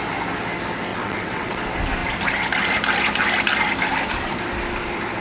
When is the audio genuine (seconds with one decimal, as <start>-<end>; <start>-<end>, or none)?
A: 0.0-0.9; 1.6-5.2